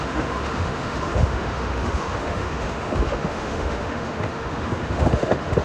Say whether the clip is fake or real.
fake